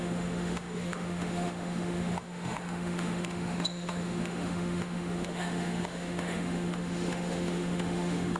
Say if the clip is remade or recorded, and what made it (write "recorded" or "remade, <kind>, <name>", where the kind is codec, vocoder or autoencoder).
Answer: remade, autoencoder, DAC-VAE